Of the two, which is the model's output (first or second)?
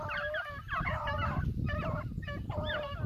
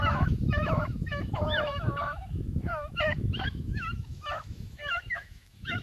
second